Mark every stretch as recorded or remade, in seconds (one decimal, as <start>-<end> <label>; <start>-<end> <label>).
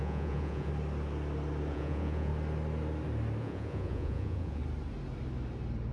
0.0-0.7 remade; 0.7-1.7 recorded; 1.7-2.3 remade; 2.3-3.4 recorded; 3.4-4.6 remade; 4.6-5.9 recorded